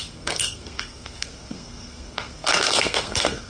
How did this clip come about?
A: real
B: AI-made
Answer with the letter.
B